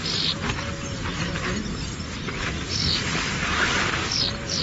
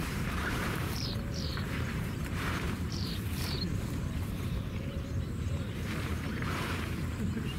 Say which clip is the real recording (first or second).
first